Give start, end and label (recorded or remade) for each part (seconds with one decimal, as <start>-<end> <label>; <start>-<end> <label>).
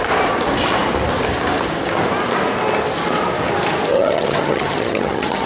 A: 0.0-3.9 recorded; 3.9-5.5 remade